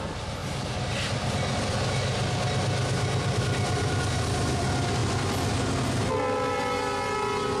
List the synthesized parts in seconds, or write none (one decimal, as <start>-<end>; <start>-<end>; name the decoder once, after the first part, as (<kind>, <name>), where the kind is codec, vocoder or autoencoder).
none